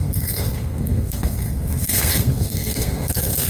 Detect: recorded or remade remade